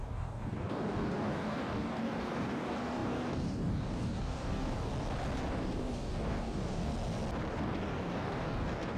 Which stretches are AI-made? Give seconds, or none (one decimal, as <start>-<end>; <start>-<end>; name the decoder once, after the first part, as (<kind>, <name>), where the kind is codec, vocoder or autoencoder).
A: 0.0-4.9 (codec, DAC); 5.5-6.9; 7.5-9.0